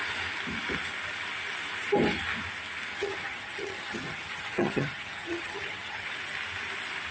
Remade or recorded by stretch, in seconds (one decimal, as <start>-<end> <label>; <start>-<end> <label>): 0.0-2.9 recorded; 2.9-6.1 remade; 6.1-7.1 recorded

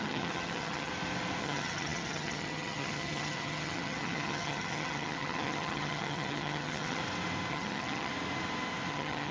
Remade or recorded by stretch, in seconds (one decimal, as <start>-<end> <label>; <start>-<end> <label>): 0.0-0.9 remade; 0.9-1.4 recorded; 1.4-7.0 remade; 7.0-7.5 recorded; 7.5-8.1 remade; 8.1-8.9 recorded; 8.9-9.3 remade

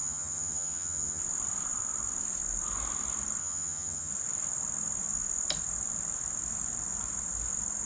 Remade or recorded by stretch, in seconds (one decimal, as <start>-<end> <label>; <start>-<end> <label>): 0.0-1.2 remade; 1.2-3.4 recorded; 3.4-4.1 remade; 4.1-7.9 recorded

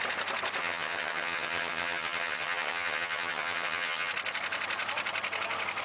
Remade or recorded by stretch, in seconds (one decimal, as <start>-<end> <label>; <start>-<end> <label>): 0.0-0.6 recorded; 0.6-4.1 remade; 4.1-5.8 recorded

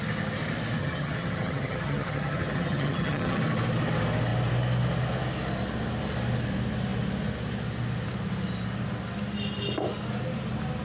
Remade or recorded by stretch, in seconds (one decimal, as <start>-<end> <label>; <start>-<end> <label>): 0.0-0.8 recorded; 0.8-3.4 remade; 3.4-10.8 recorded